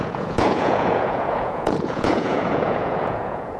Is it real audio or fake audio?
fake